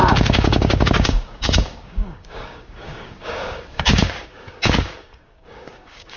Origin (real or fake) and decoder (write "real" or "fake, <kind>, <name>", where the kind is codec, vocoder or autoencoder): fake, codec, DAC